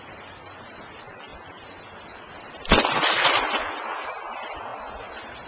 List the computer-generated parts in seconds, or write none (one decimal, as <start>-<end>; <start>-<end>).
none